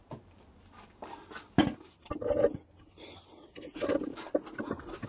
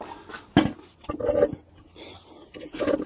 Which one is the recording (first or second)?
second